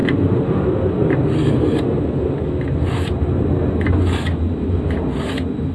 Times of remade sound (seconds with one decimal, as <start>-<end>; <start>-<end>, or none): none